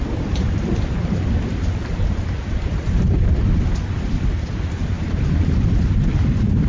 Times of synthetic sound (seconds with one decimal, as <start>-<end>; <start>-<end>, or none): none